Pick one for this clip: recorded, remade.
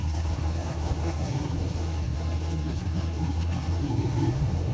remade